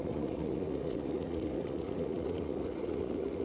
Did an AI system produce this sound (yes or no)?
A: yes